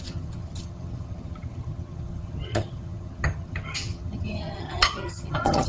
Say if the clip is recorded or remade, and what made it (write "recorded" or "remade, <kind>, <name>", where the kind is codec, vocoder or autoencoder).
remade, vocoder, HiFi-GAN